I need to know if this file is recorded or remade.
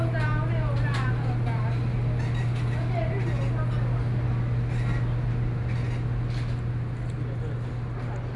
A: recorded